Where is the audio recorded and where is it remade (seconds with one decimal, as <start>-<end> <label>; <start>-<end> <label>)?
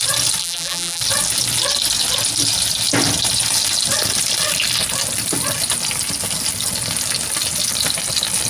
0.0-0.4 recorded; 0.4-1.0 remade; 1.0-8.5 recorded